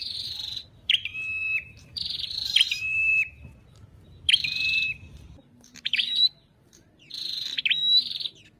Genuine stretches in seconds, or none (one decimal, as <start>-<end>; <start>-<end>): 7.5-8.6